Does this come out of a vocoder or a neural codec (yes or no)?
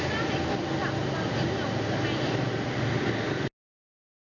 no